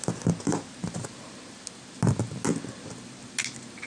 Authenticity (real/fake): real